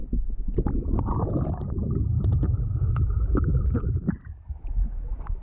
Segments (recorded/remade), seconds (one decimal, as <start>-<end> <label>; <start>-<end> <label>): 0.0-5.4 recorded